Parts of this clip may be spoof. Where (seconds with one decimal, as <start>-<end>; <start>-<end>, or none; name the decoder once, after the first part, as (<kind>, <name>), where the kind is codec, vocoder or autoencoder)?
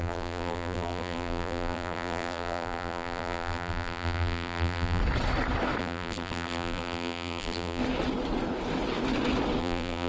0.0-5.0 (vocoder, BigVGAN v2); 5.8-7.8; 9.6-10.1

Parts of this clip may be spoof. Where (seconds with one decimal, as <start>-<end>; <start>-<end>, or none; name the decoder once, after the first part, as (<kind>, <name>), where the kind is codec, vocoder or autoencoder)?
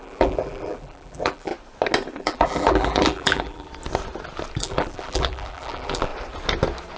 0.0-1.5 (vocoder, BigVGAN v2); 2.2-3.7; 4.6-6.1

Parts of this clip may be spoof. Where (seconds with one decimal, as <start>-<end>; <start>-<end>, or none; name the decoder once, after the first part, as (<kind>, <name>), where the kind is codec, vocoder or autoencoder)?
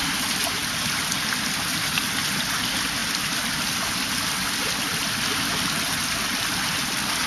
0.6-2.1 (vocoder, BigVGAN v2); 3.0-4.1